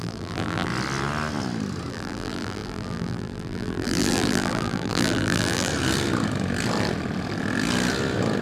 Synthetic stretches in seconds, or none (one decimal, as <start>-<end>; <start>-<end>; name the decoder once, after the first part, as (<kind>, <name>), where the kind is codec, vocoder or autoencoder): 0.0-0.7 (vocoder, BigVGAN v2); 1.9-5.7